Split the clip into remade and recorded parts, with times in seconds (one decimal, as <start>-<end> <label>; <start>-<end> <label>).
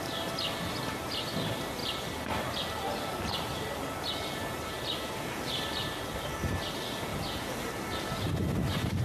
0.0-9.0 recorded